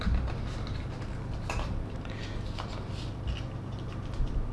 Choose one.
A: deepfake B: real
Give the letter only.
B